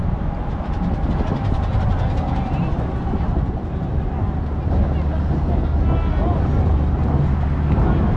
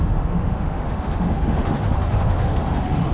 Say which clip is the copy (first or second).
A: second